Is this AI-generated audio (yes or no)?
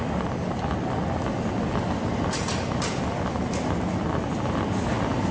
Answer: no